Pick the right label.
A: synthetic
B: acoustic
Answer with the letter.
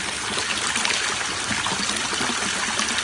B